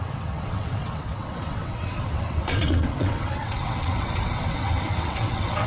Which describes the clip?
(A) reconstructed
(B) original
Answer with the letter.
A